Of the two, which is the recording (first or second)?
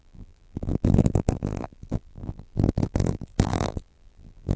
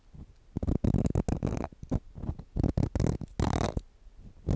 second